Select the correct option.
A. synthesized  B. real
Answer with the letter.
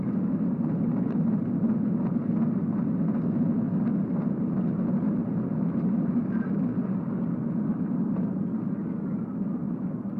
B